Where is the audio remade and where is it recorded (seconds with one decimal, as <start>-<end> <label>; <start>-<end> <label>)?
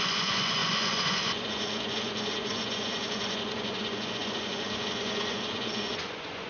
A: 0.0-6.5 remade